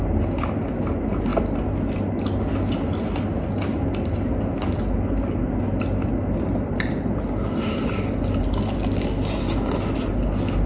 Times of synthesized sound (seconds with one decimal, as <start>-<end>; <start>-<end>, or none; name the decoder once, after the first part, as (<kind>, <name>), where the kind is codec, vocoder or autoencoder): none